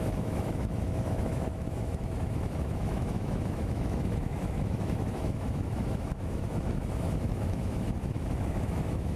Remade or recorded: remade